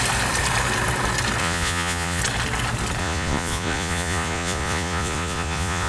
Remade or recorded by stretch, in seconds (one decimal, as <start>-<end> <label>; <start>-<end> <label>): 0.0-1.4 recorded; 1.4-2.2 remade; 2.2-3.0 recorded; 3.0-5.9 remade